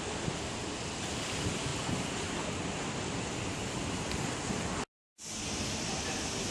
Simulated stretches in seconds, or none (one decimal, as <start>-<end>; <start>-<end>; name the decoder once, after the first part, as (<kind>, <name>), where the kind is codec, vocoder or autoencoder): 1.7-3.8 (vocoder, BigVGAN v2)